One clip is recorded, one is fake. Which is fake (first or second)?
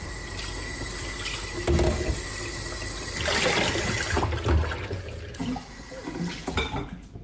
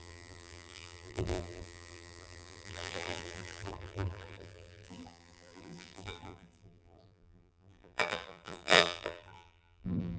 second